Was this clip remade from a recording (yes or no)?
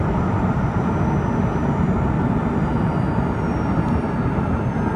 yes